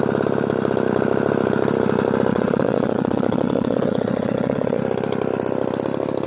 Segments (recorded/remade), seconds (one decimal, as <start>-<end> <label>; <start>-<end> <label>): 0.0-2.3 recorded; 2.3-4.8 remade; 4.8-6.3 recorded